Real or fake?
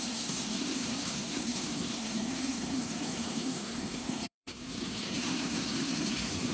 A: fake